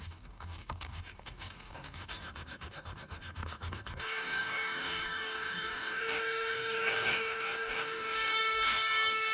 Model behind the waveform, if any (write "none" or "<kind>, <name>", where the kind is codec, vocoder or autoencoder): codec, DAC